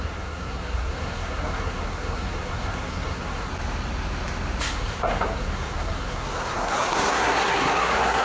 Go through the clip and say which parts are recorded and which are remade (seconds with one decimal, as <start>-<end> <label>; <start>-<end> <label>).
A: 0.0-3.5 remade; 3.5-4.6 recorded; 4.6-8.2 remade